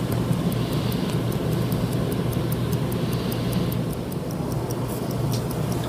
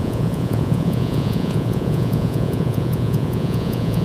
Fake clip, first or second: second